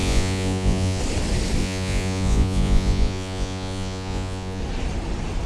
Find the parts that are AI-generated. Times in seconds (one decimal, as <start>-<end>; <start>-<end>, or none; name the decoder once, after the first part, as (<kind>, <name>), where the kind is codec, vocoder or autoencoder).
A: 0.0-1.0 (vocoder, Vocos); 1.6-4.6